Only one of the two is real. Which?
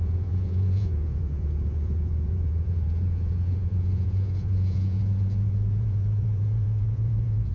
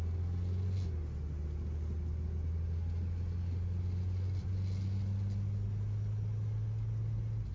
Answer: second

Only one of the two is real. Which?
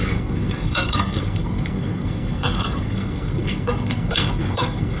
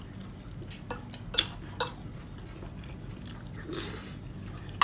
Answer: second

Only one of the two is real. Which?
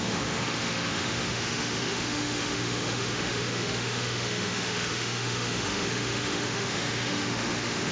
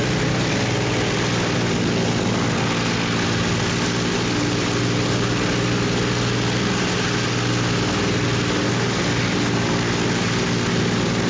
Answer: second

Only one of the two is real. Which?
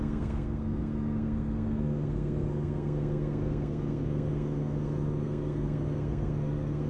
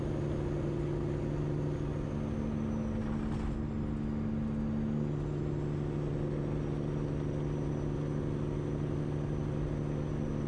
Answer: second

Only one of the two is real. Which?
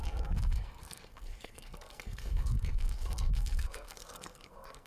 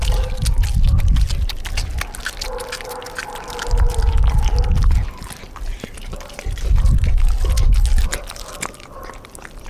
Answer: second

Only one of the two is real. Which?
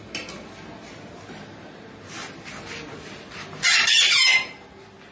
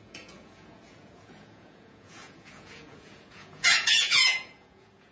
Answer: first